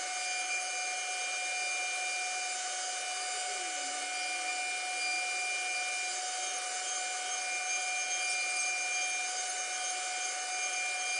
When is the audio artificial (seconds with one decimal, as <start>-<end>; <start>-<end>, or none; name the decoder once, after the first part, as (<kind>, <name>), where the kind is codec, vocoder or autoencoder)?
none

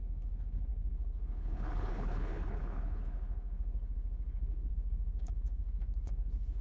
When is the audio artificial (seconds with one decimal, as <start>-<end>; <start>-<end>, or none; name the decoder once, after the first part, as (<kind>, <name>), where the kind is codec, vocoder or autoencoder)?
0.0-6.6 (codec, HILCodec)

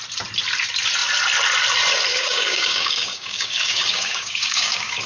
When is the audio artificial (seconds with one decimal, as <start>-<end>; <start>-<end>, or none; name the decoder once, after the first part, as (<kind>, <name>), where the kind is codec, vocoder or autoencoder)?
2.1-5.1 (codec, DAC)

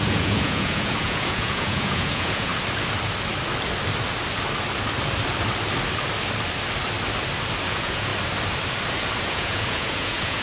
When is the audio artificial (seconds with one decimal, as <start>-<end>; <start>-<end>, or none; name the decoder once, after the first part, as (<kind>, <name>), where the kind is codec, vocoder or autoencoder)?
0.0-2.5 (vocoder, Vocos); 7.7-8.1; 9.2-10.4

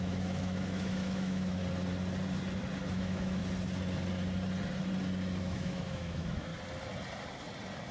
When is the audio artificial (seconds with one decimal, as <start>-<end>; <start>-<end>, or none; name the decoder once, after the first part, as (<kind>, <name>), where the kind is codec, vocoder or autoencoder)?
0.0-1.6 (autoencoder, DAC-VAE); 2.9-3.4; 5.4-6.5

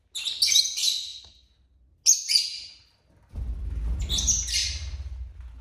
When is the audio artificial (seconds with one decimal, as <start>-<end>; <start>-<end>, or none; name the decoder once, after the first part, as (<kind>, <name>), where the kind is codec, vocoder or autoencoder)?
none

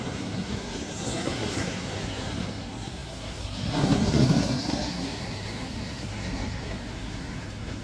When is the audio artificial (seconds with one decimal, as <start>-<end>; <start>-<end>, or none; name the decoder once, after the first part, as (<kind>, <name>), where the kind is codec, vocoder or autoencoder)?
0.0-7.8 (codec, SNAC)